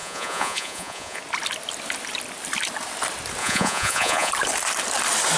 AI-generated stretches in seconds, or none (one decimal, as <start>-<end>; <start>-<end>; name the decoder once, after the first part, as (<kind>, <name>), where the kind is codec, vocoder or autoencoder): 0.0-1.2 (vocoder, Vocos); 3.4-4.3